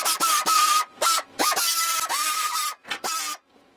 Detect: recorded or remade recorded